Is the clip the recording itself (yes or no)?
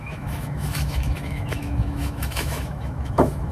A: no